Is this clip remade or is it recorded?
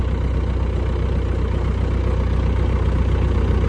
recorded